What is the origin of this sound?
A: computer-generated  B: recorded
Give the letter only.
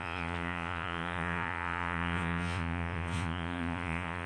A